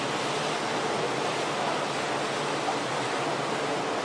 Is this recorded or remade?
recorded